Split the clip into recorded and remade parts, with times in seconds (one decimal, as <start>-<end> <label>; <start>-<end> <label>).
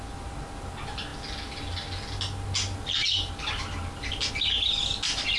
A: 0.0-5.4 recorded